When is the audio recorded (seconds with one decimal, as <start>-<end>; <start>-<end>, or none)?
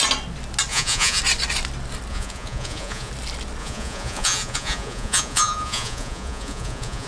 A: 0.0-0.7; 1.2-2.1; 3.1-3.6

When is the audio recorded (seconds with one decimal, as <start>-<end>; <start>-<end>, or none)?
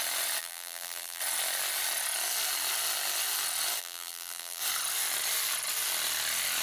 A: 0.0-0.4; 1.2-3.8; 4.6-6.6